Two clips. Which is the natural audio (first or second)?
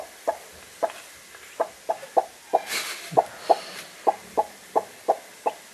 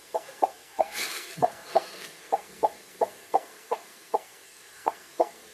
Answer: first